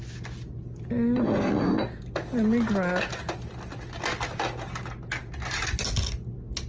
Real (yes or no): yes